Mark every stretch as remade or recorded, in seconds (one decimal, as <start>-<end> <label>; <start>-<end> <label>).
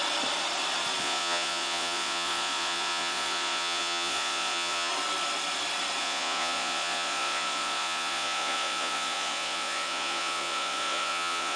0.0-1.0 recorded; 1.0-4.9 remade; 4.9-6.0 recorded; 6.0-11.6 remade